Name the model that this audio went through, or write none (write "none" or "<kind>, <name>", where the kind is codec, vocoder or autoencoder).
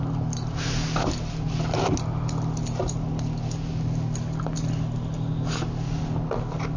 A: none